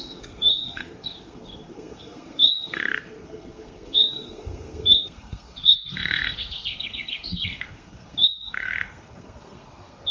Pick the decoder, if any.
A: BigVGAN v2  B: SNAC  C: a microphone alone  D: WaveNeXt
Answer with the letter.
B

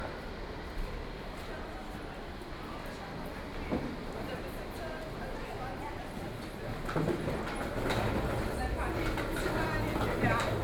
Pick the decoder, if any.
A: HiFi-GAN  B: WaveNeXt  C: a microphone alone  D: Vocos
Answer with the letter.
C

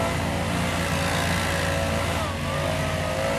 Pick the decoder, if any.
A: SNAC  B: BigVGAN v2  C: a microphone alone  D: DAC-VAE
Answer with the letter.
C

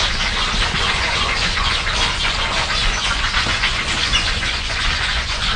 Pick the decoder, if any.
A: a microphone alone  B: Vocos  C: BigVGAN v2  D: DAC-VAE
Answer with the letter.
B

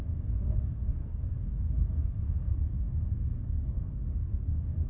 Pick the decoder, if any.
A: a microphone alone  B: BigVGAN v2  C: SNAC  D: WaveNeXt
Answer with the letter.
C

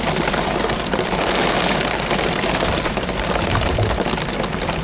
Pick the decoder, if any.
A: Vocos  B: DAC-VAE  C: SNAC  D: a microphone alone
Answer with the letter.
D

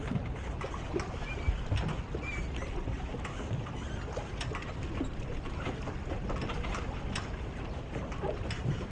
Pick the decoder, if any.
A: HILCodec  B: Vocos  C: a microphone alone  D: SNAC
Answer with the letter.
C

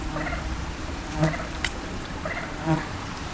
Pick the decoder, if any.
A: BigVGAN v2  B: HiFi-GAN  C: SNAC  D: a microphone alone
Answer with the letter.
A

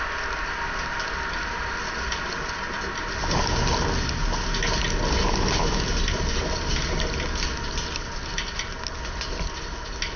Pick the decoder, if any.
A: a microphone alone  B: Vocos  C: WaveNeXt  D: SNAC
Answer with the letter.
A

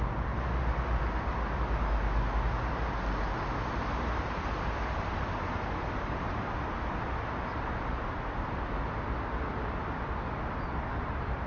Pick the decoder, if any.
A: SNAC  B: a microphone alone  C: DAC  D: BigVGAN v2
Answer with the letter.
B